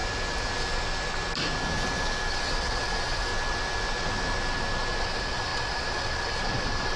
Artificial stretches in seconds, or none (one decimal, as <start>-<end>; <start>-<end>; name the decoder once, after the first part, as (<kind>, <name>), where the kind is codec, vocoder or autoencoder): 2.3-3.3 (vocoder, Vocos); 5.0-7.0